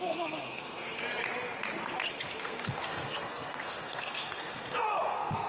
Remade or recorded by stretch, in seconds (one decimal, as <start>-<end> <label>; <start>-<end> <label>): 0.0-1.0 remade; 1.0-2.1 recorded; 2.1-5.5 remade